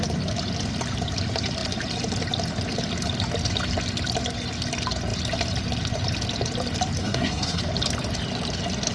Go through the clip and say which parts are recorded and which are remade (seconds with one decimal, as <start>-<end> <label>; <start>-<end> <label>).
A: 0.0-7.0 recorded; 7.0-7.6 remade; 7.6-8.9 recorded